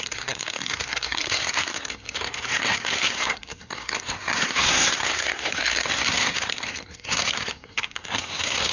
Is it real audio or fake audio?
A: fake